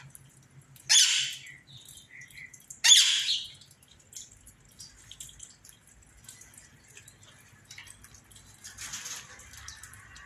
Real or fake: real